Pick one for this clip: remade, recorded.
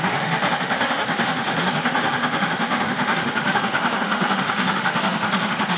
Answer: remade